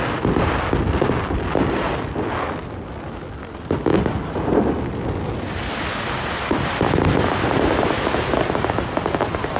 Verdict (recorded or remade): remade